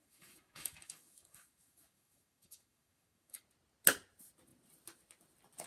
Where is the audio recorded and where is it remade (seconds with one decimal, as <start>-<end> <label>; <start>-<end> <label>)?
0.0-3.4 remade; 3.4-5.7 recorded